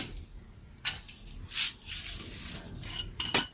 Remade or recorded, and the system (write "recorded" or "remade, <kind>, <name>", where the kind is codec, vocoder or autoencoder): recorded